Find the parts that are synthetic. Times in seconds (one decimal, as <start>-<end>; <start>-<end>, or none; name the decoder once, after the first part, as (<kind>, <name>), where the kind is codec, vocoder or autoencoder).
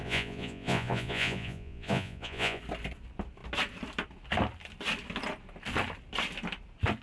0.0-2.6 (vocoder, Vocos)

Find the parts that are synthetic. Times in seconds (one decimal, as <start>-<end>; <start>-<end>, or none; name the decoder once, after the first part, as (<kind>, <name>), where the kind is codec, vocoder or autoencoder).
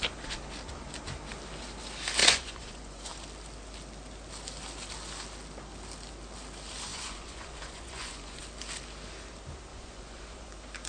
2.2-3.1 (vocoder, Vocos); 6.9-8.4; 9.7-10.5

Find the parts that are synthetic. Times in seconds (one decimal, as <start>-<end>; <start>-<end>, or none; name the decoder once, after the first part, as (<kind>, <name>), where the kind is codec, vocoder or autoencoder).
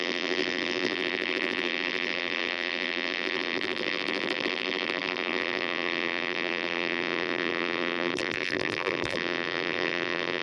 0.0-10.4 (vocoder, BigVGAN v2)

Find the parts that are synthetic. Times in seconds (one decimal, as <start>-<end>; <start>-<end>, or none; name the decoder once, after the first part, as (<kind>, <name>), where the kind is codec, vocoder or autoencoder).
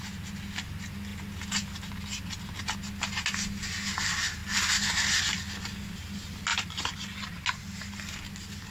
4.4-5.2 (vocoder, BigVGAN v2)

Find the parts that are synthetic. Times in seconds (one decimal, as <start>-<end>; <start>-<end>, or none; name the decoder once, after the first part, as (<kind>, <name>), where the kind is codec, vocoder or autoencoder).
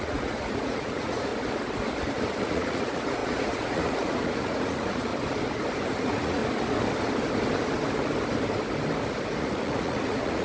0.0-1.3 (vocoder, Vocos); 2.4-5.1; 6.0-6.4; 9.4-10.4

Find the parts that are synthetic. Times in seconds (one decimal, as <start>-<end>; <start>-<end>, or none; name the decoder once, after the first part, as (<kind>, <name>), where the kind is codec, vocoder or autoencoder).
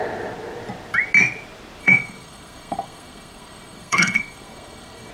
1.8-5.1 (codec, SNAC)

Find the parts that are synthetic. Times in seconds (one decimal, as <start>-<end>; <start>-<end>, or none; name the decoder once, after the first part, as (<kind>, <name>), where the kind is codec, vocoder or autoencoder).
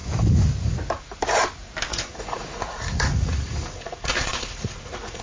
1.9-5.2 (vocoder, Vocos)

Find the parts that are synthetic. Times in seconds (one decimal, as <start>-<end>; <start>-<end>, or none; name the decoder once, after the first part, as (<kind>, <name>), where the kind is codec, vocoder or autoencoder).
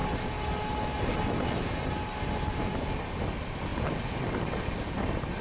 none